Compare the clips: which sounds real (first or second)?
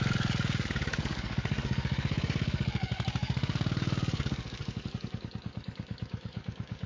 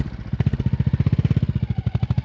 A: second